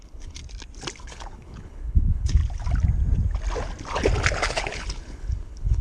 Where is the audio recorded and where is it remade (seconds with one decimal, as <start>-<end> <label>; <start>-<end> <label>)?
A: 0.0-0.4 remade; 0.4-1.0 recorded; 1.0-2.4 remade; 2.4-4.5 recorded; 4.5-5.8 remade